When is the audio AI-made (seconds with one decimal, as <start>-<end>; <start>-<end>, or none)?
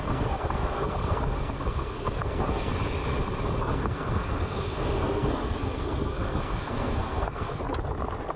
0.0-2.7; 3.6-7.6